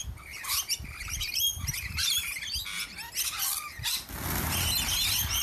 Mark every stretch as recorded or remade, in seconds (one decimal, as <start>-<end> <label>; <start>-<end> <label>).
0.0-2.2 remade; 2.2-4.3 recorded; 4.3-5.4 remade